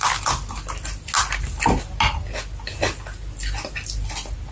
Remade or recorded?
recorded